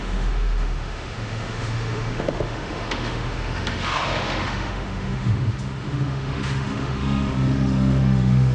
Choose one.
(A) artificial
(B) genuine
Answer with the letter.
A